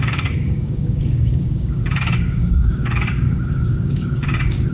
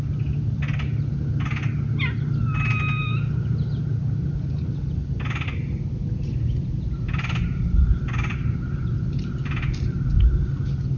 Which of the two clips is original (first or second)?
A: second